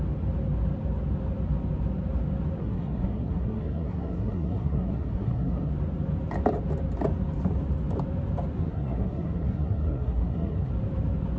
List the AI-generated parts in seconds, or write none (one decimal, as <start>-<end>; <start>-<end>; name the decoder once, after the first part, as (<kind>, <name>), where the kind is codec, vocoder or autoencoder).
2.6-5.7 (codec, SNAC); 8.6-10.7